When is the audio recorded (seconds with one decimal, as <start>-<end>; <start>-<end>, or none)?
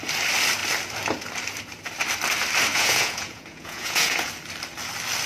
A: 0.0-2.7; 4.3-5.3